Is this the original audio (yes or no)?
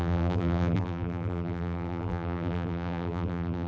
no